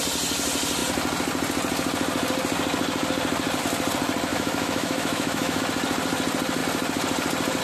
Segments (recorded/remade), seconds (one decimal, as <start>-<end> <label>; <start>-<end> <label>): 0.0-4.3 recorded; 4.3-5.6 remade; 5.6-7.6 recorded